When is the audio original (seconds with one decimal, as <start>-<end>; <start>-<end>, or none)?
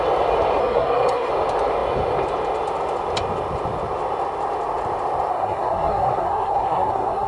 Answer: 0.0-0.6; 1.3-5.3